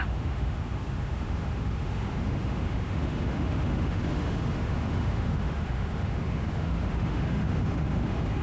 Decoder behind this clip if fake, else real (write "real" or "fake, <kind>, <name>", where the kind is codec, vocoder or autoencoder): fake, autoencoder, DAC-VAE